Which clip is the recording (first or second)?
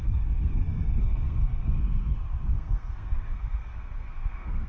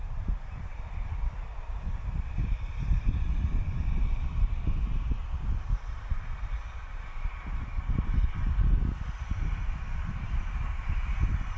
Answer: second